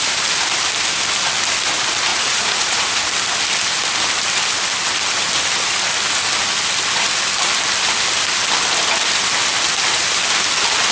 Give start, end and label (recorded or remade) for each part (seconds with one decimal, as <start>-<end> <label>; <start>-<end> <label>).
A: 0.0-2.1 recorded; 2.1-3.0 remade; 3.0-10.9 recorded